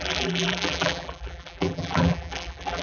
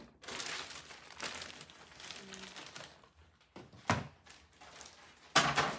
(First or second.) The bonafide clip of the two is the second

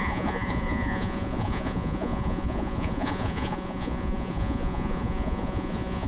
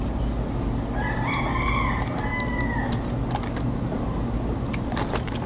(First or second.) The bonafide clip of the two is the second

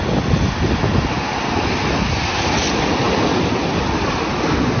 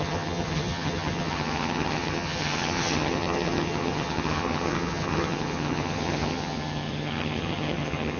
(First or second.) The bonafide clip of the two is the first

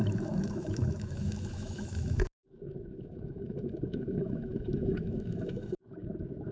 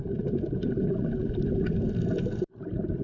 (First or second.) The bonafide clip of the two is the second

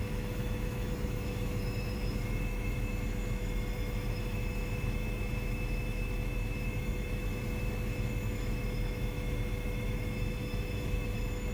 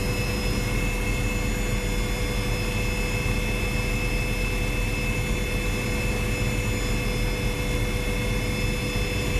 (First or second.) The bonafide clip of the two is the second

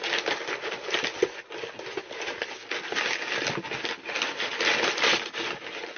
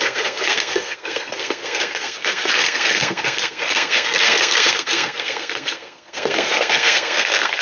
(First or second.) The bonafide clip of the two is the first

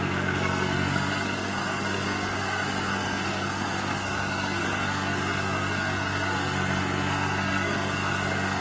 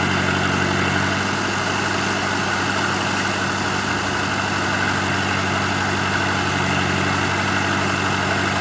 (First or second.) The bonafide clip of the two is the second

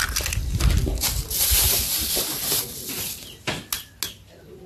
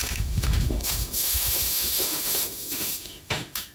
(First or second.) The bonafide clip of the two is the first